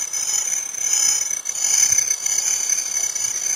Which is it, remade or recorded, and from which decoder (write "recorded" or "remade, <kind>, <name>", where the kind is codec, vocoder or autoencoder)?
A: recorded